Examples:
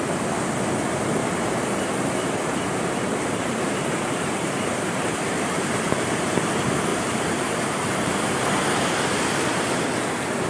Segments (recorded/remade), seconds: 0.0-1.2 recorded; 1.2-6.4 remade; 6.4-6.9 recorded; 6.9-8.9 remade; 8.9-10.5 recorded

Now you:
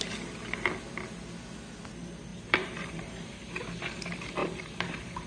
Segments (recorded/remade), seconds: 0.0-2.3 recorded; 2.3-3.4 remade; 3.4-4.4 recorded; 4.4-5.3 remade

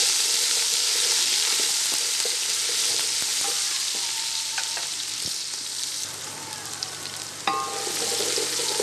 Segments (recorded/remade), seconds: 0.0-3.3 recorded; 3.3-7.0 remade; 7.0-8.8 recorded

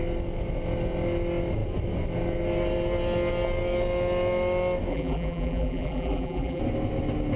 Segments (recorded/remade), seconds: 0.0-4.9 recorded; 4.9-6.6 remade; 6.6-7.4 recorded